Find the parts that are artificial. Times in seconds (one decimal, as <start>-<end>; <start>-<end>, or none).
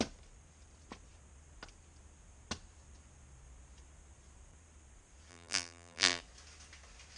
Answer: 5.3-6.2